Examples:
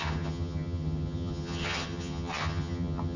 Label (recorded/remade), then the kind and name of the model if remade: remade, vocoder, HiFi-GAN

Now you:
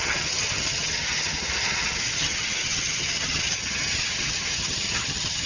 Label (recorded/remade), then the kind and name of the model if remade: remade, vocoder, HiFi-GAN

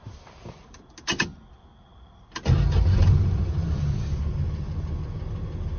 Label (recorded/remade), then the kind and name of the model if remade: recorded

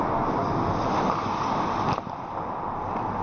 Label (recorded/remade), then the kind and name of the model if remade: recorded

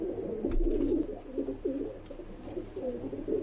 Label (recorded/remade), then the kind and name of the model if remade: recorded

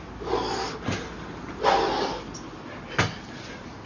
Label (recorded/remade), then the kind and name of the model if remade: recorded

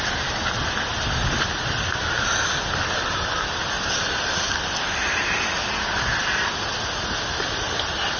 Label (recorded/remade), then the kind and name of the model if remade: recorded